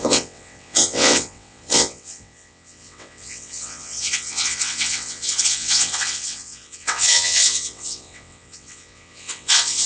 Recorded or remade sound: remade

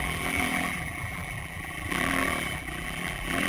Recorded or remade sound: remade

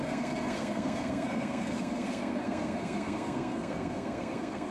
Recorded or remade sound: remade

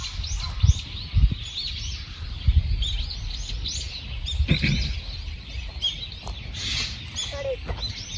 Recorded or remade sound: recorded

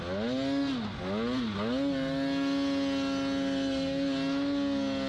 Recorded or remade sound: recorded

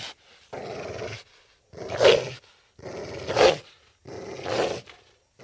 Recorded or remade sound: recorded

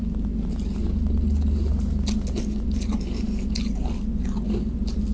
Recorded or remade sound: recorded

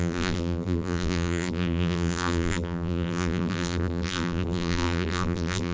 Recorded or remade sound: remade